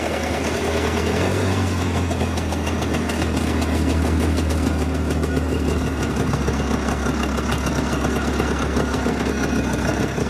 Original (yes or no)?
no